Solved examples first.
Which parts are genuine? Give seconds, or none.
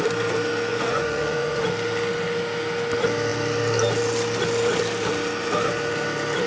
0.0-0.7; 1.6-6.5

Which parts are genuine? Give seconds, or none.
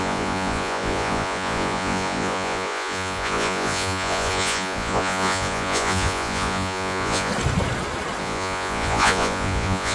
7.3-8.2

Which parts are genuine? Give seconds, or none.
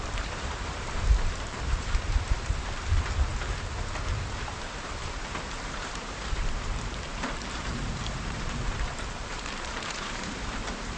3.3-4.5